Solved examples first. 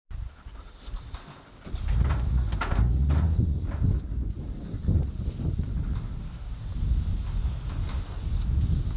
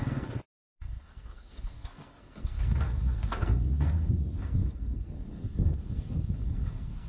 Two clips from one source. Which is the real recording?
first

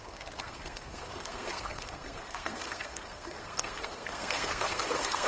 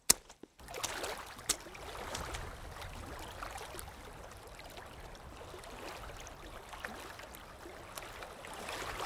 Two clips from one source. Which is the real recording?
second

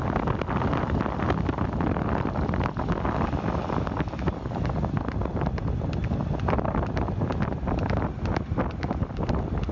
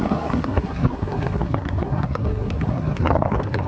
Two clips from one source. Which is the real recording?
first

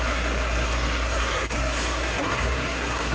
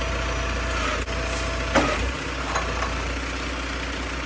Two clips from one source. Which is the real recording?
second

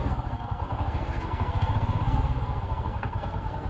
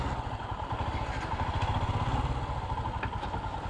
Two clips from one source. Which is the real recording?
second